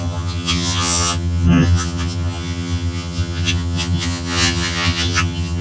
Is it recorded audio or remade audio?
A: remade